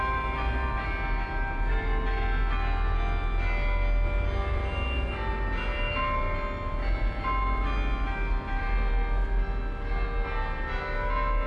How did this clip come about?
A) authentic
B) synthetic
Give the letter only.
A